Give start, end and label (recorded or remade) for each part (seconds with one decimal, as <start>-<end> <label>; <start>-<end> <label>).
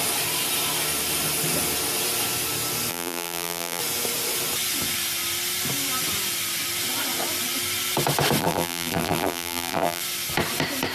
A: 0.0-2.9 recorded; 2.9-3.8 remade; 3.8-8.4 recorded; 8.4-10.0 remade; 10.0-10.9 recorded